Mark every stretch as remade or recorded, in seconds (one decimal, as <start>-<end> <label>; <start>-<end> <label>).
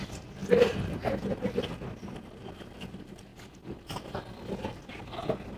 0.0-5.6 recorded